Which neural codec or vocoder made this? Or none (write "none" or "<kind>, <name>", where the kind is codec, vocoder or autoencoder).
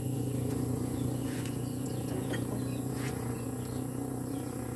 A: vocoder, Vocos